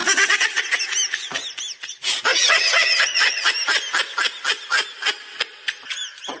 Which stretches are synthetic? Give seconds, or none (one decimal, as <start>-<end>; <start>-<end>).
0.0-0.6; 2.3-3.5